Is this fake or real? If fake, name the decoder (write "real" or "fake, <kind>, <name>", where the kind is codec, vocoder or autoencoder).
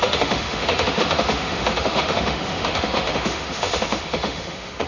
fake, autoencoder, DAC-VAE